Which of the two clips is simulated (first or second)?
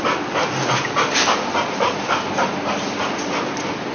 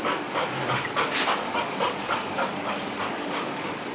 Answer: second